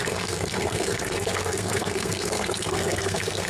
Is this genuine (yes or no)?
no